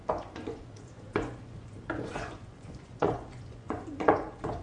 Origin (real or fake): fake